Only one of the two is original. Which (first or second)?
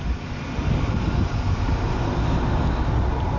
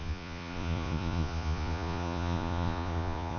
first